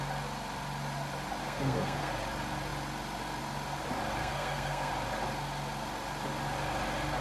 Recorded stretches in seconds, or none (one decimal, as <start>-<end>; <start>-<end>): 0.0-1.4; 2.1-4.2; 4.9-7.2